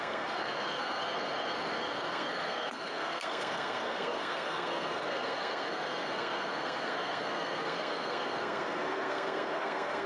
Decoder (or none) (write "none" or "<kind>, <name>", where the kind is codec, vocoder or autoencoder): codec, SNAC